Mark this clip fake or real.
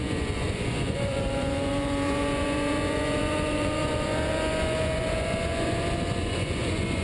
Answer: fake